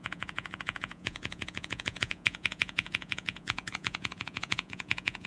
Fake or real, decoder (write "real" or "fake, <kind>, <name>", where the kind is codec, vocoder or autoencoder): fake, vocoder, Vocos